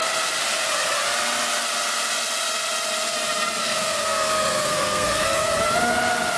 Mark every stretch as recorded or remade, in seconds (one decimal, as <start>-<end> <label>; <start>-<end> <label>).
0.0-3.6 recorded; 3.6-5.5 remade; 5.5-6.4 recorded